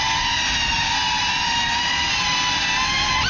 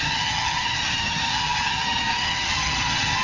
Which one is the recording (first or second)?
first